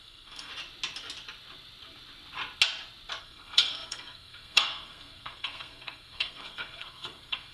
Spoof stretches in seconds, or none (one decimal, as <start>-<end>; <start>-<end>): 0.0-0.5; 3.2-7.5